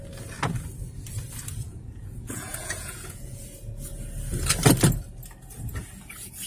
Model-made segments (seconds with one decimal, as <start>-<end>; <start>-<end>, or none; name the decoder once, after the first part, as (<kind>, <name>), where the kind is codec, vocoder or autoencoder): 1.5-3.4 (vocoder, Vocos)